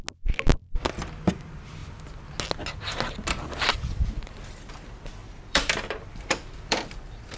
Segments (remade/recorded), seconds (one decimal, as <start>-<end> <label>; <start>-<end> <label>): 0.0-5.2 recorded; 5.2-7.4 remade